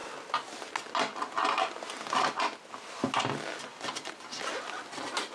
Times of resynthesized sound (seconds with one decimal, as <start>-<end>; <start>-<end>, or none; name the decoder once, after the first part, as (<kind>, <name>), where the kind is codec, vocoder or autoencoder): 3.7-4.4 (vocoder, BigVGAN v2)